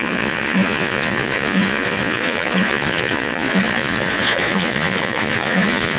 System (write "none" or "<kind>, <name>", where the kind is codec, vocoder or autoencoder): vocoder, Vocos